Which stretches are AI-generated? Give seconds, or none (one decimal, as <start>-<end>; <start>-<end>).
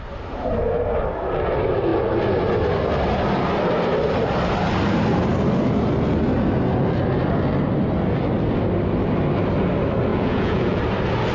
10.1-10.8